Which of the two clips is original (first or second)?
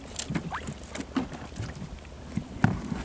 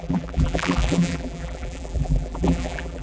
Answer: first